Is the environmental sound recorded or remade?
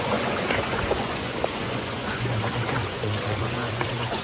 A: remade